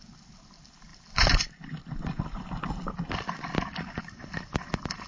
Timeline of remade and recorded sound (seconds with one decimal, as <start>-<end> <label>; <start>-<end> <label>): 0.0-5.1 recorded